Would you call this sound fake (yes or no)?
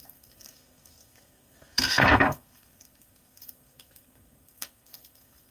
yes